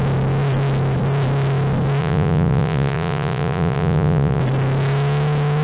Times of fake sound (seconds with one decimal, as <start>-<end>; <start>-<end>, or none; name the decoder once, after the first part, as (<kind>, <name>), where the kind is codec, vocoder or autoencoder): 2.0-4.4 (vocoder, Vocos)